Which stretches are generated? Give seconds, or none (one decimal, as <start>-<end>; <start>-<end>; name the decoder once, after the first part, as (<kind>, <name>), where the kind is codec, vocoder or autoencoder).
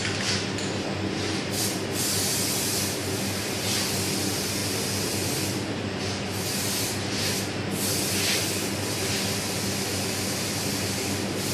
none